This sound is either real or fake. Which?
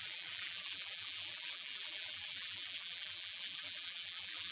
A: fake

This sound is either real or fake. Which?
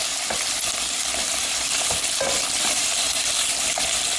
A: real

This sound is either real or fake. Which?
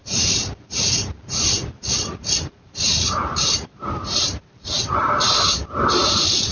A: fake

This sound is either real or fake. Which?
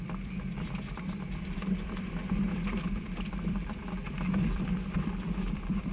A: fake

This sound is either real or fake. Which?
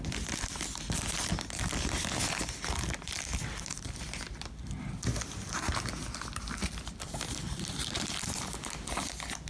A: real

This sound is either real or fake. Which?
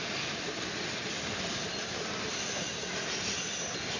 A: real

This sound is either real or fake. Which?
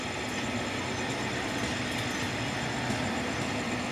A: real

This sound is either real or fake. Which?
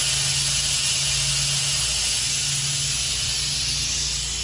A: real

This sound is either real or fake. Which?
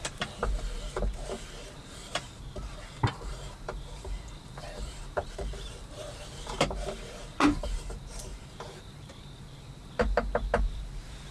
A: fake